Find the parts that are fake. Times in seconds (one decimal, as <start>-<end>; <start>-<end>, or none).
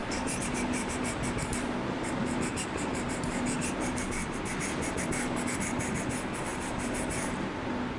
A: 0.0-1.1; 2.9-3.7; 6.5-7.6